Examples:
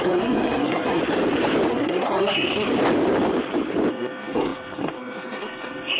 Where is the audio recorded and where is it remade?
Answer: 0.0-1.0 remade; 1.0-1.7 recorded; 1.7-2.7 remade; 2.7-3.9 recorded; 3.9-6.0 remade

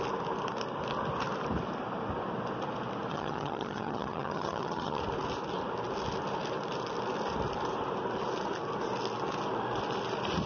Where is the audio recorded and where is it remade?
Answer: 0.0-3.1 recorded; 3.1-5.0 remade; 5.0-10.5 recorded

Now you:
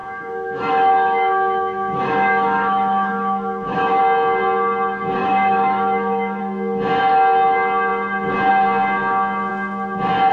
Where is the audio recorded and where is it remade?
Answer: 0.0-4.0 remade; 4.0-5.2 recorded; 5.2-6.4 remade; 6.4-10.3 recorded

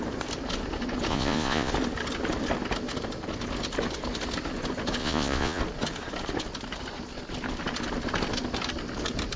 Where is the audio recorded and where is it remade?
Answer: 0.0-1.1 recorded; 1.1-1.7 remade; 1.7-5.0 recorded; 5.0-5.6 remade; 5.6-9.4 recorded

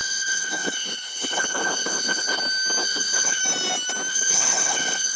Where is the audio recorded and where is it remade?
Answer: 0.0-2.4 remade; 2.4-2.8 recorded; 2.8-3.4 remade; 3.4-4.1 recorded; 4.1-5.2 remade

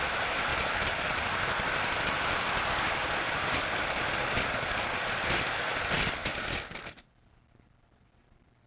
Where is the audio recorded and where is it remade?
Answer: 0.0-0.5 recorded; 0.5-2.7 remade; 2.7-8.7 recorded

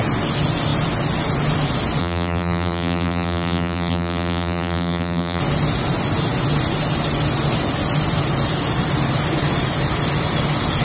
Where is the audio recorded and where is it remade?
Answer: 0.0-2.0 recorded; 2.0-5.4 remade; 5.4-10.8 recorded

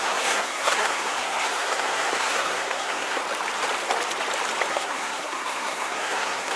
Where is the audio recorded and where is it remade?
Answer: 0.0-3.2 remade; 3.2-4.7 recorded; 4.7-6.6 remade